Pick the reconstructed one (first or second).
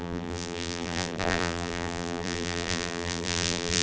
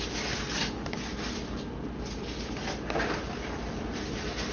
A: first